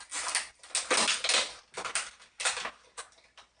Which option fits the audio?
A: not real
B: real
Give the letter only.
B